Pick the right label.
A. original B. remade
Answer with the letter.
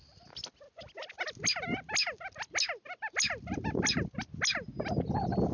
A